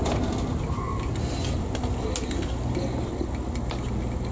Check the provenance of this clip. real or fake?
real